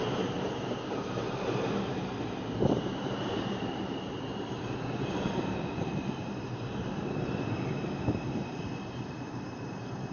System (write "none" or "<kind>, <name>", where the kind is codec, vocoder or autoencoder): vocoder, BigVGAN v2